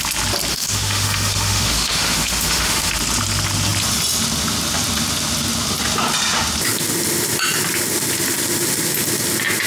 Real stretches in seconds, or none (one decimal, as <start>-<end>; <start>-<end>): 0.0-0.5; 2.9-9.7